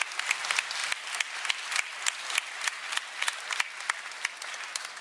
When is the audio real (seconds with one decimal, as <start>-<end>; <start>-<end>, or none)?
0.0-5.0